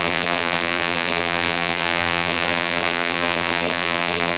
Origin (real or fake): fake